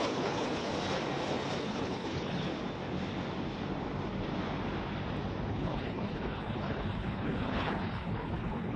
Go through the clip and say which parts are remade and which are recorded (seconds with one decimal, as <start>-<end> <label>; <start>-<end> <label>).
0.0-0.7 remade; 0.7-1.6 recorded; 1.6-2.5 remade; 2.5-5.5 recorded; 5.5-8.8 remade